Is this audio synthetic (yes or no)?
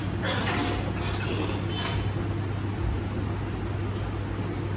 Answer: no